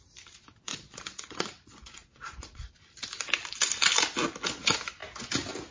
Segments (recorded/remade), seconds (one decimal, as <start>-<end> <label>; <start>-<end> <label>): 0.0-0.7 recorded; 0.7-2.6 remade; 2.6-5.7 recorded